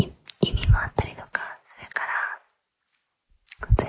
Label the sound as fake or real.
real